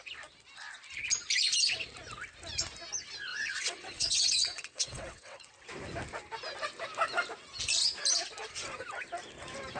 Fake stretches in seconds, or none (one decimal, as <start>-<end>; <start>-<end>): 3.3-5.5